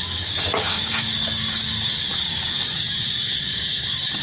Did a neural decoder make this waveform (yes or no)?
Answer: yes